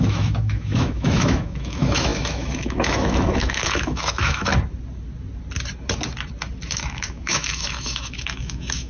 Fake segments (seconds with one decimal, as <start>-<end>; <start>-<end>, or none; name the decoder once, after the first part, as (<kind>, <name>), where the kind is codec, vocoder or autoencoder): 0.0-4.5 (autoencoder, DAC-VAE); 6.7-8.9